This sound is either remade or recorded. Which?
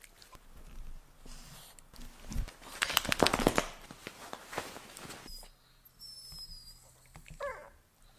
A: recorded